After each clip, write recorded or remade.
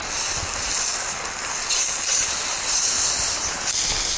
recorded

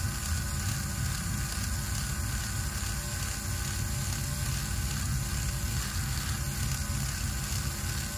recorded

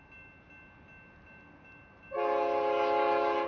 recorded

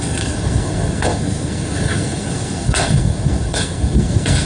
remade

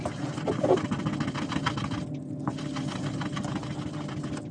recorded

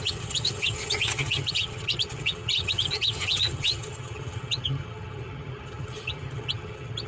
remade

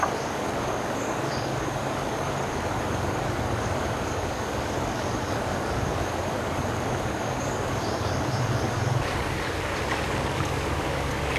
remade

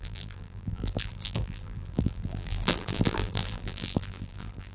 remade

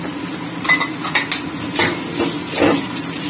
recorded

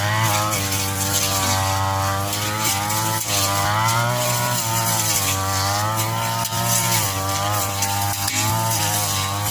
recorded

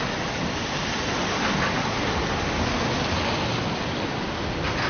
recorded